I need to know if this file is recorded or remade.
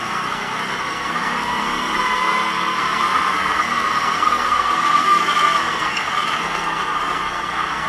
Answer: remade